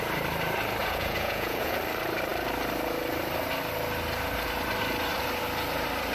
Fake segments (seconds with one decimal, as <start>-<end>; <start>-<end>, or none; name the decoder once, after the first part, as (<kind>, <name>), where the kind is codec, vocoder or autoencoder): 0.8-1.8 (vocoder, Vocos)